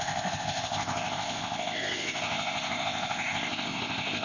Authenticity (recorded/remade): remade